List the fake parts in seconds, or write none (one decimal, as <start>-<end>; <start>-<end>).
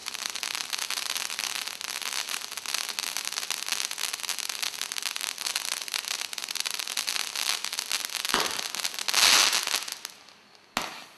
0.0-0.6; 3.7-7.1